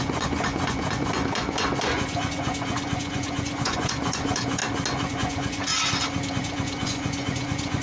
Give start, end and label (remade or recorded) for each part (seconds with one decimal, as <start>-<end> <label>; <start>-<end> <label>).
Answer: 0.0-4.6 remade; 4.6-5.1 recorded; 5.1-5.7 remade; 5.7-6.3 recorded; 6.3-7.8 remade